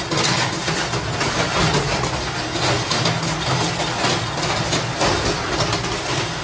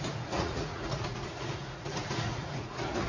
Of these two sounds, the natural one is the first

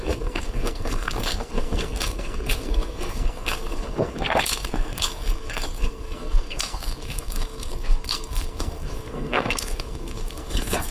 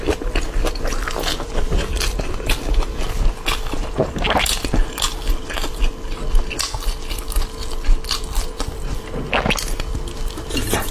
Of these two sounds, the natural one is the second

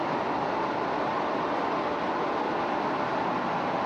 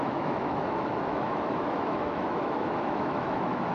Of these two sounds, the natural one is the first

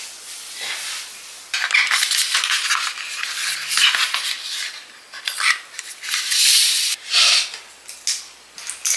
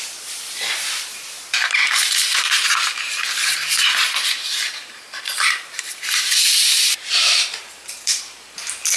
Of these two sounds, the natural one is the first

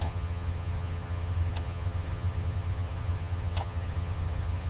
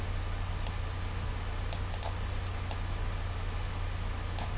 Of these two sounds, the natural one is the second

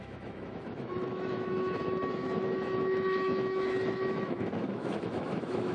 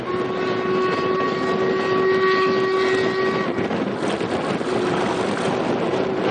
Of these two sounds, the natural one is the second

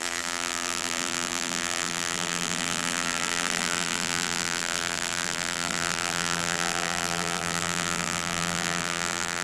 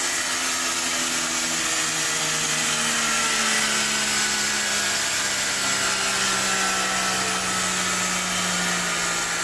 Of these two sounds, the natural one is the second